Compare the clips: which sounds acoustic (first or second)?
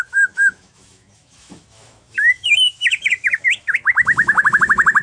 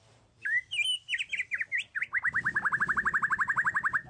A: second